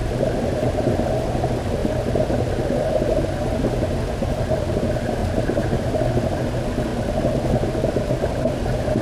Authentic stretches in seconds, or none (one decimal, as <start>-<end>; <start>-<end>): 0.0-5.2; 5.9-9.0